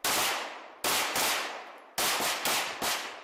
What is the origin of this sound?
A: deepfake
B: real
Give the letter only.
B